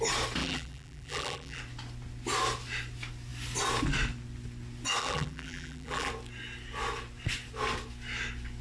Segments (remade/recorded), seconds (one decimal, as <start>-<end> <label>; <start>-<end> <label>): 0.0-0.4 recorded; 0.4-1.6 remade; 1.6-5.0 recorded; 5.0-6.1 remade; 6.1-8.6 recorded